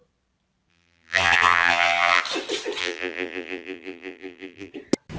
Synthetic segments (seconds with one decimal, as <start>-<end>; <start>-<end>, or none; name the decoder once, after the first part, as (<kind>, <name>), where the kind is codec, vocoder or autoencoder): 0.7-2.2 (vocoder, BigVGAN v2); 2.8-4.7